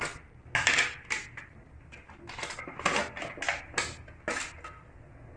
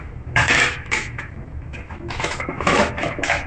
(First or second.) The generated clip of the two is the second